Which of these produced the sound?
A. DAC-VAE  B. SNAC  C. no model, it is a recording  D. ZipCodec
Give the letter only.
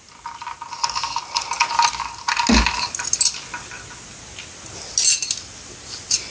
C